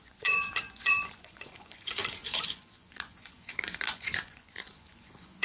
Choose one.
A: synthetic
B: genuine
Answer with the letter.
A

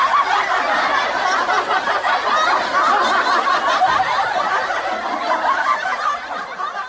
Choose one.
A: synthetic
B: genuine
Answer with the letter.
B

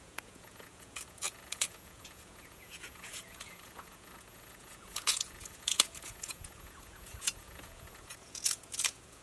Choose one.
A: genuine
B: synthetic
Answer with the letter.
B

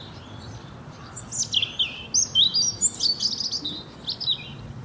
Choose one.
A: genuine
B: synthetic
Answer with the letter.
A